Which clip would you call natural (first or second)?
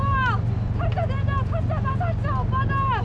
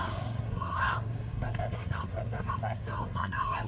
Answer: first